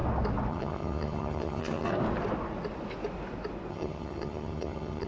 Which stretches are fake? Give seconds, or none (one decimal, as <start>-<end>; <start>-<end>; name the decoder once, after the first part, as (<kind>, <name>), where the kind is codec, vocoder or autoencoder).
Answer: 0.5-1.9 (vocoder, HiFi-GAN); 3.7-5.1